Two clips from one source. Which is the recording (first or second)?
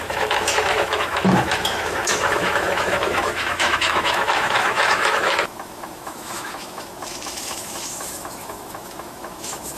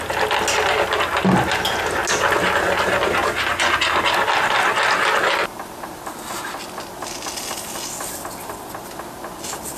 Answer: second